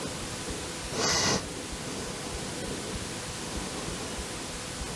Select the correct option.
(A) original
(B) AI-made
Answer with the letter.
A